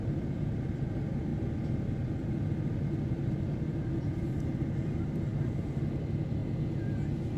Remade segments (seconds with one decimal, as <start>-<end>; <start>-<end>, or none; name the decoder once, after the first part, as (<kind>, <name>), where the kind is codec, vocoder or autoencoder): 0.0-6.4 (vocoder, BigVGAN v2)